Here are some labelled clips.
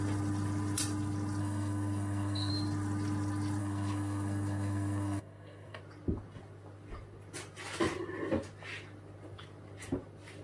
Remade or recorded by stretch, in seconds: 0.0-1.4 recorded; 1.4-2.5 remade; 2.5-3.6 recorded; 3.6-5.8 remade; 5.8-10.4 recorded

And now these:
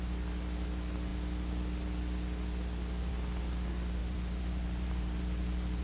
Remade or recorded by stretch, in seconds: 0.0-4.0 recorded; 4.0-5.8 remade

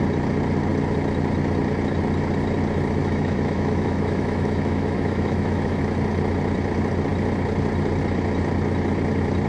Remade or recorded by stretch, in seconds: 0.0-3.0 recorded; 3.0-5.8 remade; 5.8-9.5 recorded

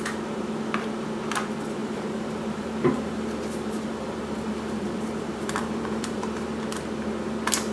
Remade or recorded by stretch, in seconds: 0.0-1.8 recorded; 1.8-6.4 remade; 6.4-7.7 recorded

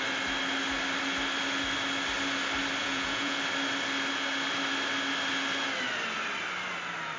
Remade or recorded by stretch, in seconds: 0.0-2.8 recorded; 2.8-3.4 remade; 3.4-7.2 recorded

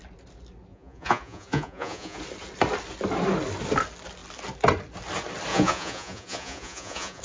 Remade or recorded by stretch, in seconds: 0.0-0.7 recorded; 0.7-2.2 remade; 2.2-5.5 recorded; 5.5-7.2 remade